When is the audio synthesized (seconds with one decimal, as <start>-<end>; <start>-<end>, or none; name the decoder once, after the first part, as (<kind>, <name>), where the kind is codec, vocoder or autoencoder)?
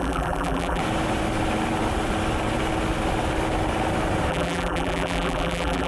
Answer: 0.0-0.8 (vocoder, BigVGAN v2); 4.3-5.9